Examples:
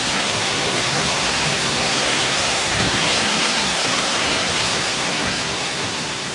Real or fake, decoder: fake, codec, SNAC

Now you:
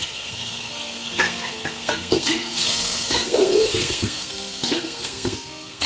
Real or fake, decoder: fake, codec, SNAC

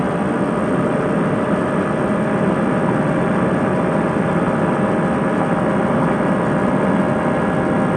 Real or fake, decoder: real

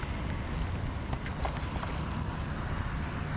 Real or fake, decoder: real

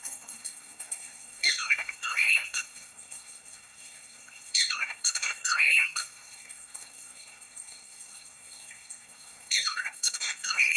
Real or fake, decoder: fake, codec, SNAC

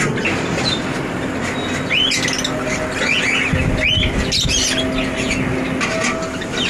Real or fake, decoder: real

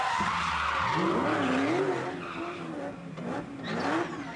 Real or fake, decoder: real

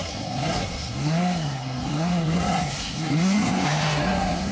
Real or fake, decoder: fake, codec, SNAC